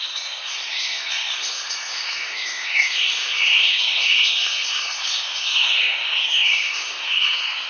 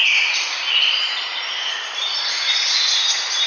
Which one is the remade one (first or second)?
first